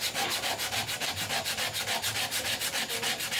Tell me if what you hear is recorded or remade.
recorded